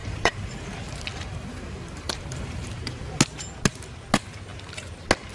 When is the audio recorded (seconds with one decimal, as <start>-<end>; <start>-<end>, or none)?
3.2-5.3

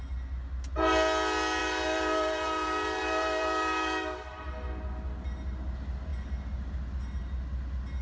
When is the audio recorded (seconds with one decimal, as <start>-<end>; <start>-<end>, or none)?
0.0-1.6; 4.5-8.0